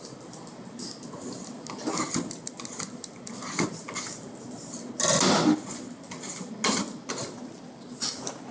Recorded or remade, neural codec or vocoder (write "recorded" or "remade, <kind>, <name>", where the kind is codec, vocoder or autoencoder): recorded